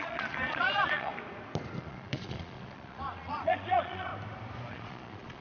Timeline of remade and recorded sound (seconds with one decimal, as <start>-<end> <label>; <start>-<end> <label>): 0.0-1.1 remade; 1.1-1.8 recorded; 1.8-4.1 remade; 4.1-4.7 recorded; 4.7-5.4 remade